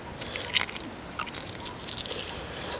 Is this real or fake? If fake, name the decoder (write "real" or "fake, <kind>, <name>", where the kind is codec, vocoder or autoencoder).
real